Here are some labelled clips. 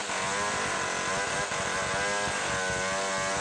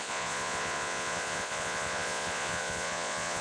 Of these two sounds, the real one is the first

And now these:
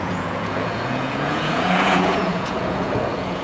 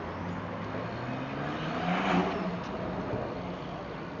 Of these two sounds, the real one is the second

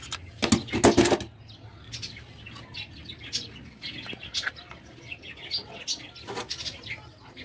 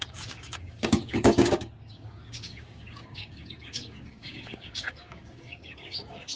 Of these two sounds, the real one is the first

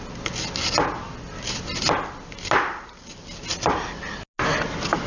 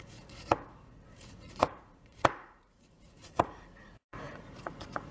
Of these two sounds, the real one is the first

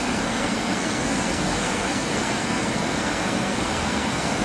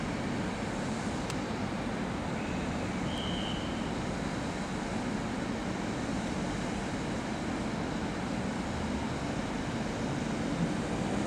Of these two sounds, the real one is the second